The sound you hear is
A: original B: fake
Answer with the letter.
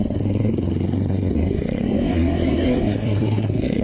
B